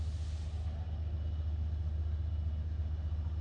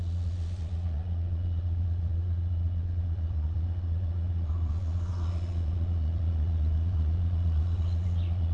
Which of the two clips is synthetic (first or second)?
second